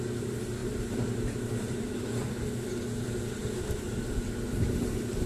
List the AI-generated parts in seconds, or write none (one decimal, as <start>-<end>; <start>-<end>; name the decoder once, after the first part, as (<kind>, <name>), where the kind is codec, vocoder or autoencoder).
0.6-2.3 (vocoder, BigVGAN v2)